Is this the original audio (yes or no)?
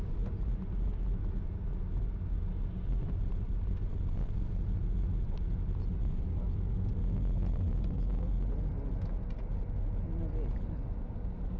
yes